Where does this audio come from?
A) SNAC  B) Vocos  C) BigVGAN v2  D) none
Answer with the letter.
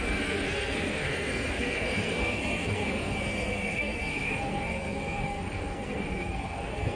A